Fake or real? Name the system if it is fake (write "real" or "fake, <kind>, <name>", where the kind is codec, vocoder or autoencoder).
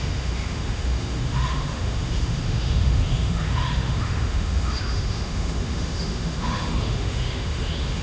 fake, autoencoder, DAC-VAE